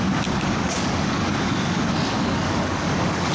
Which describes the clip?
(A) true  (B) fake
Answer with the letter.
B